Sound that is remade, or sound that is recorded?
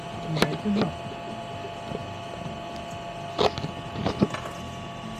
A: recorded